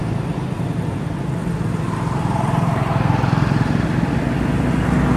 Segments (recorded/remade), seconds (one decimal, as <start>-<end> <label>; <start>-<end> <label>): 0.0-3.1 remade; 3.1-5.2 recorded